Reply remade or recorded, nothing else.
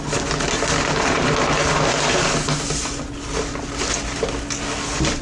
recorded